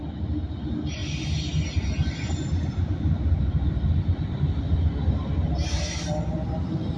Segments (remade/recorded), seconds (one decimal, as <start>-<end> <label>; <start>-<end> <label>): 0.0-7.0 recorded